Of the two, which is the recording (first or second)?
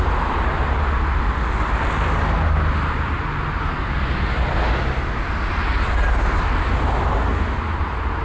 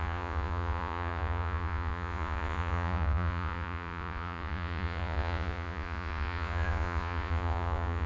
first